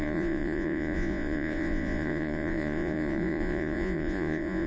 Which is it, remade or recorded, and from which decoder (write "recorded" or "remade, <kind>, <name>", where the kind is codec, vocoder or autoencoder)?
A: remade, vocoder, Vocos